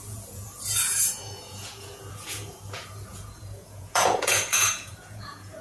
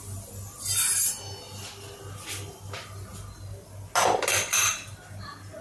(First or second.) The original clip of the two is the second